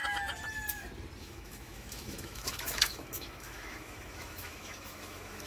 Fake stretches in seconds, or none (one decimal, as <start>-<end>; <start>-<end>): 1.2-5.5